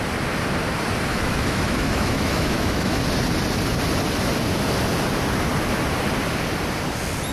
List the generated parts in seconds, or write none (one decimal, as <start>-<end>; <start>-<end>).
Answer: 1.1-3.0